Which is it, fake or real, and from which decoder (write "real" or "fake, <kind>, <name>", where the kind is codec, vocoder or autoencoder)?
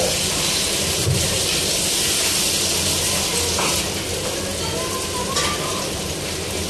real